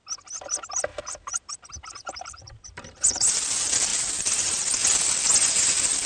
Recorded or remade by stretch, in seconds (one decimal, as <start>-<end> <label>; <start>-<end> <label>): 0.0-0.9 recorded; 0.9-1.5 remade; 1.5-2.0 recorded; 2.0-3.4 remade; 3.4-3.9 recorded; 3.9-4.7 remade; 4.7-6.1 recorded